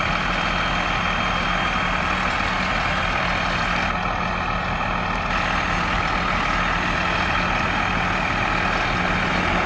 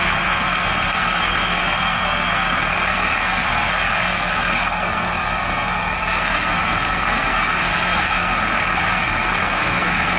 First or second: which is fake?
second